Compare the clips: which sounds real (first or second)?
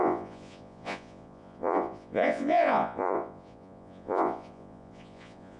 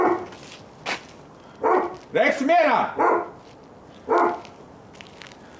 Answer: second